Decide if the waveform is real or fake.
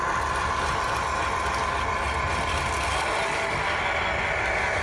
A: real